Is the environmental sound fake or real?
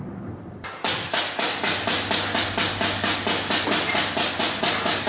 real